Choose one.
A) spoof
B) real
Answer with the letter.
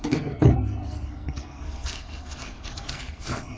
A